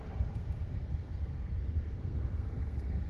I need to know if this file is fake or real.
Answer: fake